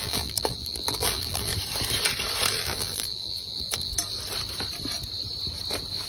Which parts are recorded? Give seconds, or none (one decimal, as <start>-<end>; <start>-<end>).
1.5-2.5; 3.9-6.1